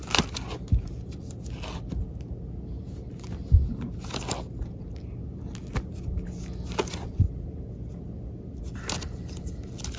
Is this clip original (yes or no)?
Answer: yes